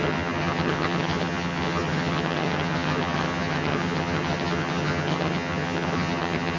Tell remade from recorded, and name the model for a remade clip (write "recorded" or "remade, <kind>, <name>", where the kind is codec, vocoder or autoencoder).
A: remade, vocoder, HiFi-GAN